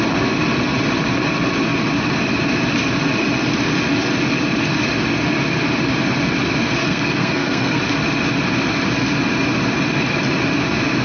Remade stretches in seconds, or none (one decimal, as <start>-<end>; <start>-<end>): 6.8-7.8